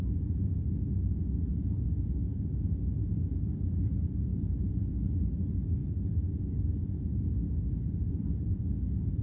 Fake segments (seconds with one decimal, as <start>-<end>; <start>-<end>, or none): 4.3-5.0; 5.8-6.4